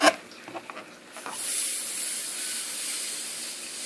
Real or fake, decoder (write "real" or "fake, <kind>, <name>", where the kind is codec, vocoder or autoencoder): real